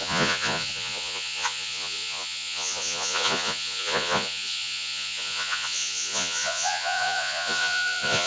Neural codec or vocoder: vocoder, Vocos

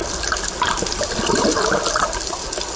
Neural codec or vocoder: none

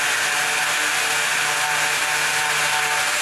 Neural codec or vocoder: none